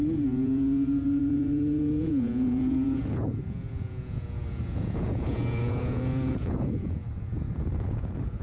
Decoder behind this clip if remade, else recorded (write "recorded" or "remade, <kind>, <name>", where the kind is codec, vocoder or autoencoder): remade, vocoder, Vocos